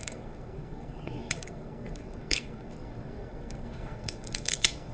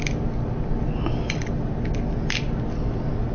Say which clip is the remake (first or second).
first